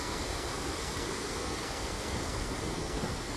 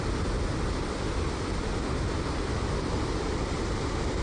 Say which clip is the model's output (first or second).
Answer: first